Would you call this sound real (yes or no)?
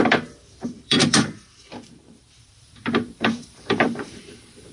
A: no